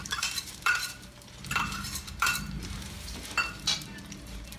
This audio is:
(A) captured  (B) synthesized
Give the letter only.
B